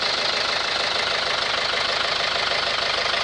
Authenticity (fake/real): real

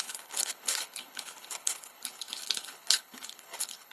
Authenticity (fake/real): fake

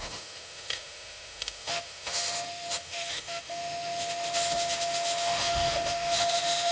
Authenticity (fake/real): fake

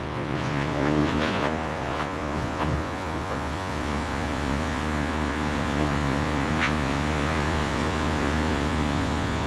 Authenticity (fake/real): fake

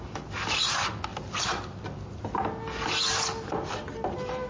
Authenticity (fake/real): real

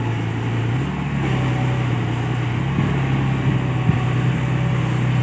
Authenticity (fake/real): real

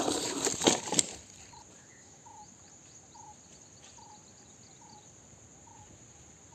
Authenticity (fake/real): real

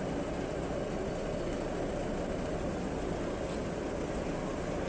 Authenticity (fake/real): real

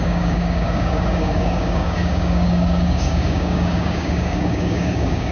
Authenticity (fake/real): fake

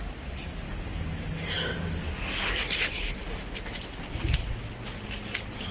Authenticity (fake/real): real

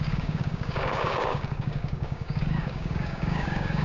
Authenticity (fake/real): fake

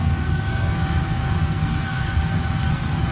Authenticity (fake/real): fake